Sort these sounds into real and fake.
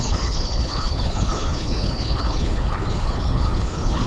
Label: fake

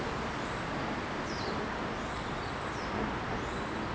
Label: real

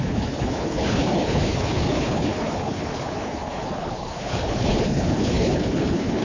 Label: fake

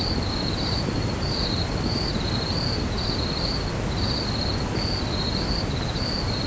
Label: real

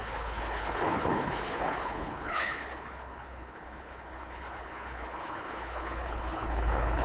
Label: fake